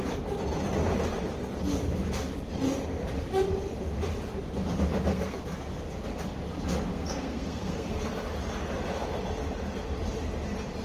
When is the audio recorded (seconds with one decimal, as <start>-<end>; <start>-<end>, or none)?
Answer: 0.0-5.1; 5.8-6.9; 8.1-10.8